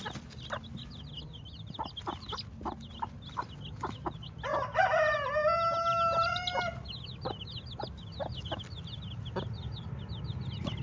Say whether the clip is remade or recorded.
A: recorded